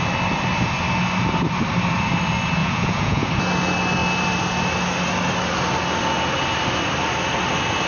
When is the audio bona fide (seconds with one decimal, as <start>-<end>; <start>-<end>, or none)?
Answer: 0.0-2.6; 3.3-7.9